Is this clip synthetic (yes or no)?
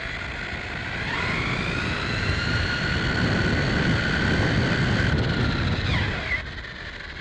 no